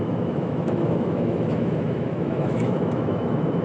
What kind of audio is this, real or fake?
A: fake